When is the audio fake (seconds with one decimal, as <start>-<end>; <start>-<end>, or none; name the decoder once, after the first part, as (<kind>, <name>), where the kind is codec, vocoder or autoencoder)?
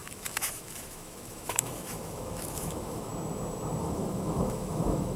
0.0-3.1 (autoencoder, DAC-VAE); 3.8-5.2